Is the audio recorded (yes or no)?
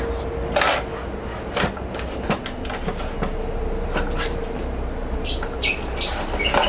yes